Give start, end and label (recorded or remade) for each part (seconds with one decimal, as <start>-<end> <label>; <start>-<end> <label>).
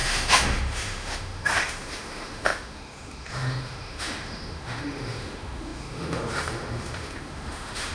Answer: 0.0-7.9 remade